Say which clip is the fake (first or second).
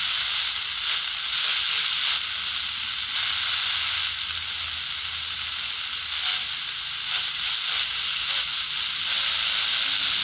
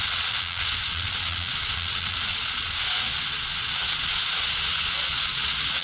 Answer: second